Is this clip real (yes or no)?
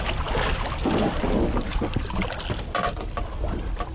yes